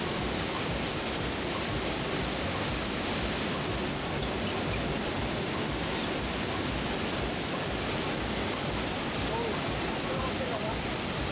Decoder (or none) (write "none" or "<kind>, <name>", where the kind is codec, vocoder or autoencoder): none